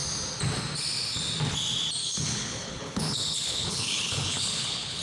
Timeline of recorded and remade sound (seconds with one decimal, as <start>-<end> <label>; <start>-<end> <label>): 0.0-2.0 recorded; 2.0-5.0 remade